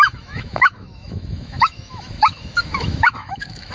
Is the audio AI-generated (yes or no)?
yes